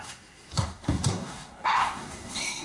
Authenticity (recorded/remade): remade